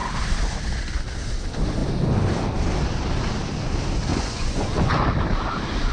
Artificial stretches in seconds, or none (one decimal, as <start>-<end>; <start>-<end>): 4.1-5.1